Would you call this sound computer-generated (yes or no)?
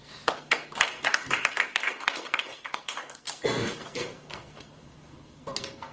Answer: yes